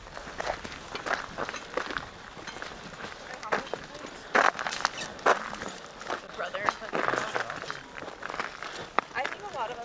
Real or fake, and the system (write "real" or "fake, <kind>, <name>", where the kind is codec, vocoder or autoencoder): real